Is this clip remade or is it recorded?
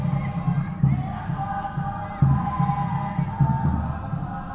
recorded